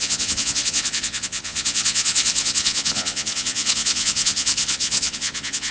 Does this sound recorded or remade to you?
remade